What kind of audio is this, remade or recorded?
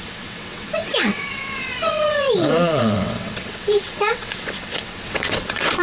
remade